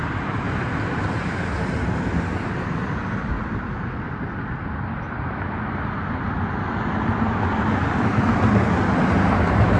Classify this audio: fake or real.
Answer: real